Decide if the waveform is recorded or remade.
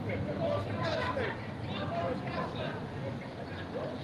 recorded